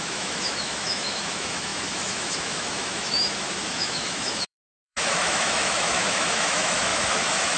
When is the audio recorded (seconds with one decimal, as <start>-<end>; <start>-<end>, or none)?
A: none